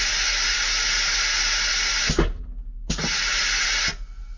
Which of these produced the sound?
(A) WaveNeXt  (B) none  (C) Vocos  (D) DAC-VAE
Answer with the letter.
B